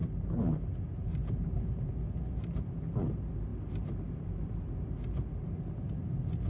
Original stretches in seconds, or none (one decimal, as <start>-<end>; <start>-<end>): 0.0-6.5